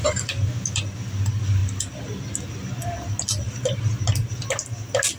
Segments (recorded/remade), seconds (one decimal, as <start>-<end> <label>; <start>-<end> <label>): 0.0-5.2 recorded